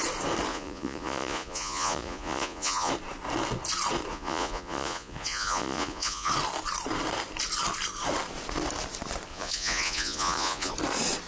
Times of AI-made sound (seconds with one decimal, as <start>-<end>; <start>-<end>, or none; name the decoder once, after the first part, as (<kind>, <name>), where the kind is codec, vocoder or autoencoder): 0.5-2.9 (vocoder, Vocos); 4.1-6.3; 9.3-10.7